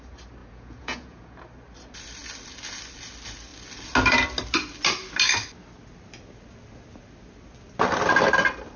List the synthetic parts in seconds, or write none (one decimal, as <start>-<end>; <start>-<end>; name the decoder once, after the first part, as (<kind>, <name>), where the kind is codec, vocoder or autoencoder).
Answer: 0.4-1.4 (vocoder, Vocos)